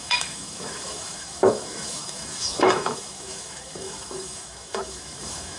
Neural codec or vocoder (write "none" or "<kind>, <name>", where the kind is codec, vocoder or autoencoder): autoencoder, DAC-VAE